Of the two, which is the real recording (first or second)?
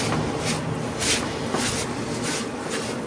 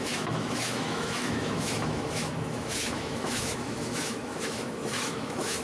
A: first